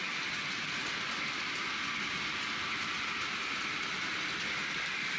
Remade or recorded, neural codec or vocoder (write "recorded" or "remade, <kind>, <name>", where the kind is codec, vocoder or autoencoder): recorded